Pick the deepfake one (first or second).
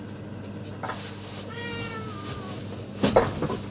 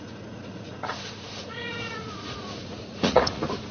second